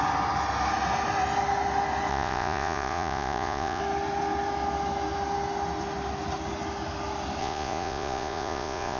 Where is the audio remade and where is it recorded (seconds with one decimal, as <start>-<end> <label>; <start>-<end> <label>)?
0.0-2.1 recorded; 2.1-3.8 remade; 3.8-7.4 recorded; 7.4-9.0 remade